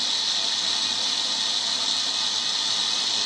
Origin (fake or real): real